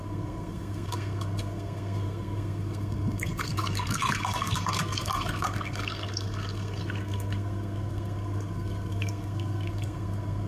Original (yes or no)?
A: no